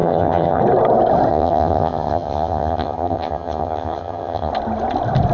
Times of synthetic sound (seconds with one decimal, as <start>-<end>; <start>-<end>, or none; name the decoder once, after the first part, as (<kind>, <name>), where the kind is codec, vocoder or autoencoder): 0.0-0.6 (vocoder, HiFi-GAN); 1.3-4.5